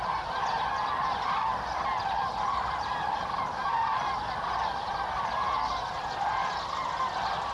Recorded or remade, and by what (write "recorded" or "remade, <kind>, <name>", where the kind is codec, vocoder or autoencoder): recorded